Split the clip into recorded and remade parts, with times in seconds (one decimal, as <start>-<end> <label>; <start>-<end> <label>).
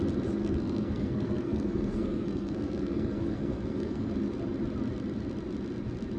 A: 0.0-0.4 recorded; 0.4-4.1 remade; 4.1-6.2 recorded